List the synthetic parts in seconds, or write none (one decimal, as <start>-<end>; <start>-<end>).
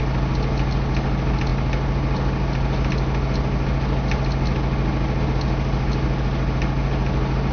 none